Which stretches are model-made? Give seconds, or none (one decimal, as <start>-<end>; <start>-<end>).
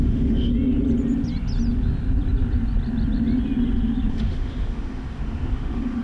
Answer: 0.0-0.5; 4.1-6.0